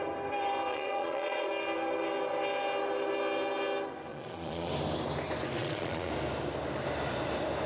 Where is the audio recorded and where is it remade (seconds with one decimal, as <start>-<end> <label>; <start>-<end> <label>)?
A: 0.0-0.7 recorded; 0.7-1.5 remade; 1.5-4.1 recorded; 4.1-4.7 remade; 4.7-5.6 recorded; 5.6-6.1 remade; 6.1-7.7 recorded